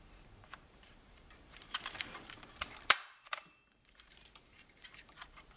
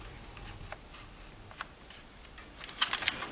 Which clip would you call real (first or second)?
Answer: second